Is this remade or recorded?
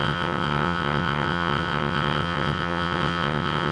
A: remade